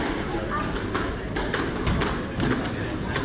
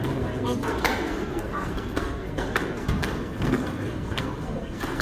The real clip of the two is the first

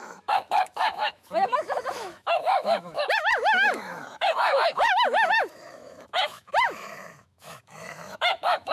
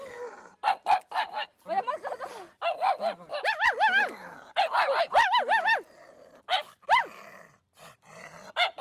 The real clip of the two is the second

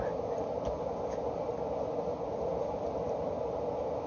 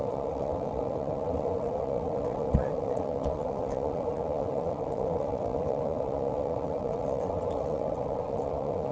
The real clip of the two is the first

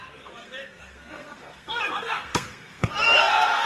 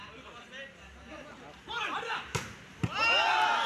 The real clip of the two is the second